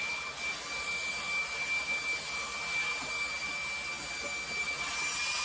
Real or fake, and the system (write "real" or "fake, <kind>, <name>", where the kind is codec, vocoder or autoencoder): real